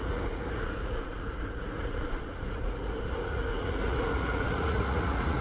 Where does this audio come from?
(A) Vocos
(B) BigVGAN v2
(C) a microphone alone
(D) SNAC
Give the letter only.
A